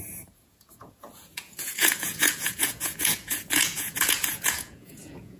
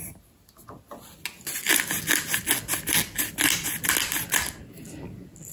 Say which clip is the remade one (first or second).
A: first